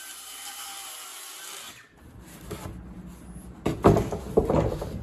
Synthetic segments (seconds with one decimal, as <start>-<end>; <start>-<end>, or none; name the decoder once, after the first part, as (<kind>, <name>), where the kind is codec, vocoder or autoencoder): 1.1-2.5 (vocoder, BigVGAN v2)